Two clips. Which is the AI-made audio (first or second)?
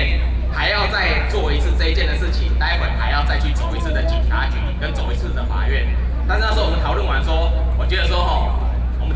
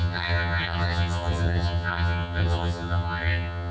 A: second